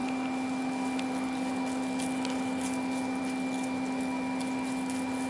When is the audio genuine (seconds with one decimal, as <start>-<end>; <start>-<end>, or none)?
0.0-5.3